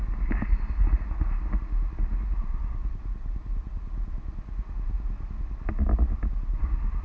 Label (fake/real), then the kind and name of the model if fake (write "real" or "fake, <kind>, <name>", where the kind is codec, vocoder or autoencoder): real